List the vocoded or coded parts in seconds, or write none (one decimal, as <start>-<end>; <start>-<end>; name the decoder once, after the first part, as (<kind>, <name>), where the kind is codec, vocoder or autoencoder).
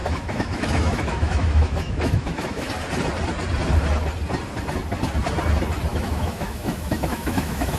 0.0-2.7 (autoencoder, DAC-VAE); 5.9-7.8